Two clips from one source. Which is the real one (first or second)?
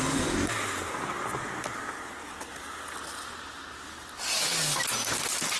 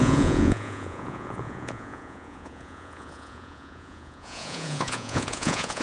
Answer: first